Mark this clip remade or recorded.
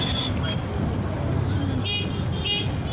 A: recorded